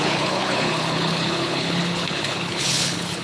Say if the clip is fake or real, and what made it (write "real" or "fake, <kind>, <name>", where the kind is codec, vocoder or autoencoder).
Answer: fake, codec, HILCodec